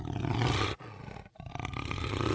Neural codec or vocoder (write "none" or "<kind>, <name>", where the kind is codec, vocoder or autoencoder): none